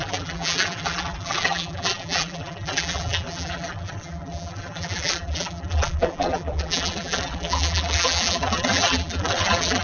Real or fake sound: fake